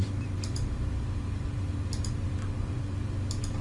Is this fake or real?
real